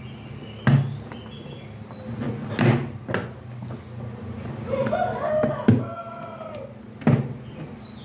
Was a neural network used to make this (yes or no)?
no